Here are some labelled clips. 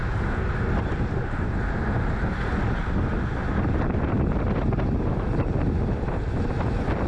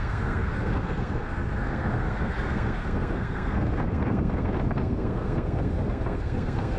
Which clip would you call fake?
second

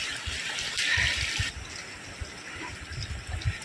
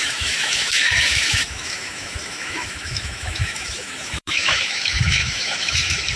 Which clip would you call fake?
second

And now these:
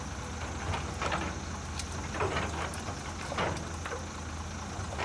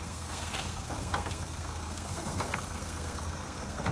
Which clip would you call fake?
second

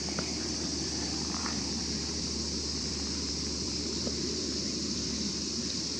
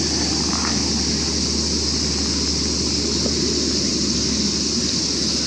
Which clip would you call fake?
first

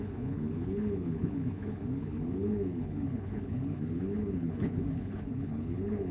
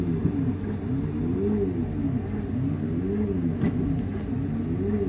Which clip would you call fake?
first